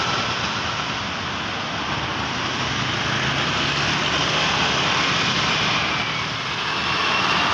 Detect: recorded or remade recorded